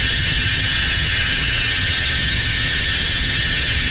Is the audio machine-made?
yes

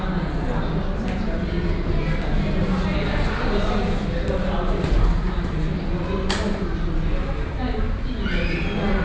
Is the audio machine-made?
no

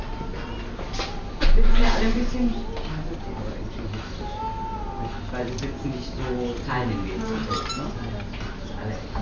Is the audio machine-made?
no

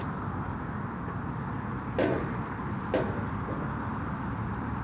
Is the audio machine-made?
no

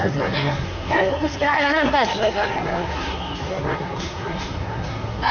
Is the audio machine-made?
yes